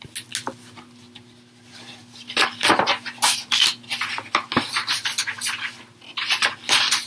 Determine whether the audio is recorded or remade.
recorded